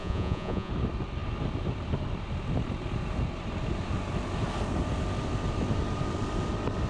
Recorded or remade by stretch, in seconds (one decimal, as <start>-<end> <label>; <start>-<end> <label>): 0.0-0.7 remade; 0.7-6.9 recorded